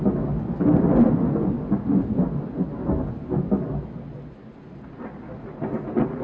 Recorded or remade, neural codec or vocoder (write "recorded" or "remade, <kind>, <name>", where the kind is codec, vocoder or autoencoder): recorded